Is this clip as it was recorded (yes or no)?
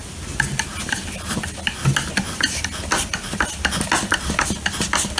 yes